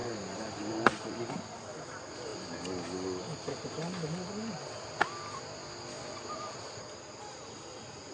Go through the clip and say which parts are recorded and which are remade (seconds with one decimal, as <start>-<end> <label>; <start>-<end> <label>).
0.0-1.3 remade; 1.3-8.1 recorded